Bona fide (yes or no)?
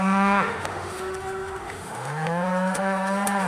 no